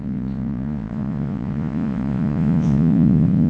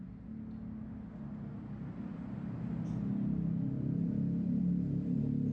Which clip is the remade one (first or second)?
first